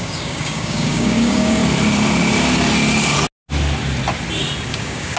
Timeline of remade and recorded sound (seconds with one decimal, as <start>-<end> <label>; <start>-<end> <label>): 0.0-1.6 remade; 1.6-4.7 recorded; 4.7-5.2 remade